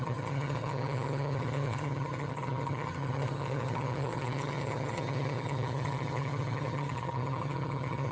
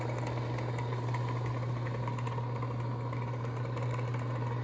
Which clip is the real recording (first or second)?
second